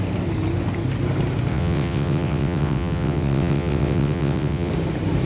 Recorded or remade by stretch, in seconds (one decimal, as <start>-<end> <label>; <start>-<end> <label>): 0.0-1.5 recorded; 1.5-4.7 remade; 4.7-5.3 recorded